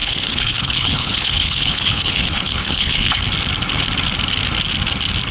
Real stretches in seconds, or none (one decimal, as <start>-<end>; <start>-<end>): 3.2-5.3